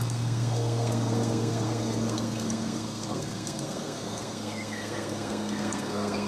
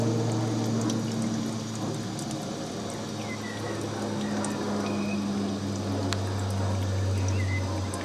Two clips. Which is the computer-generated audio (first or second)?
first